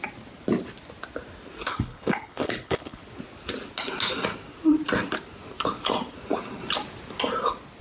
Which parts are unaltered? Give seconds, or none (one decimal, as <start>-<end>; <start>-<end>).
0.0-1.6; 3.0-7.8